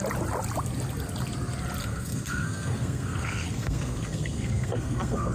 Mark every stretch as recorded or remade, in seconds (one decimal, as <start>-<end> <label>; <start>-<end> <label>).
0.0-1.8 recorded; 1.8-5.3 remade